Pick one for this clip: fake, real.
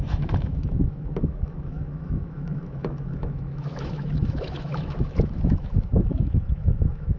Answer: fake